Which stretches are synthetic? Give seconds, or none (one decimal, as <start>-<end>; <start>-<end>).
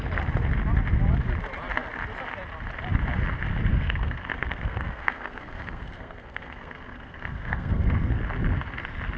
3.7-8.2